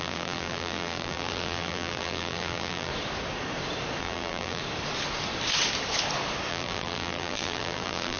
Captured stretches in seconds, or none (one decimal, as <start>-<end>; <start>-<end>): 2.9-4.0; 4.6-6.5